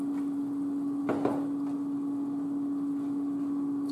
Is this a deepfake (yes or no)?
no